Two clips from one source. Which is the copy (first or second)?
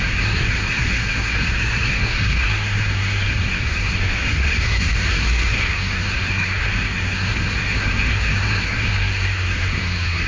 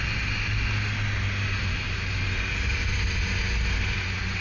first